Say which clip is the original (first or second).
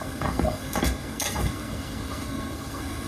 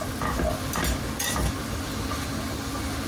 second